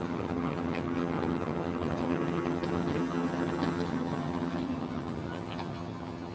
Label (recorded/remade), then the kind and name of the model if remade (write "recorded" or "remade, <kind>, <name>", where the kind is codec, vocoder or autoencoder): remade, vocoder, HiFi-GAN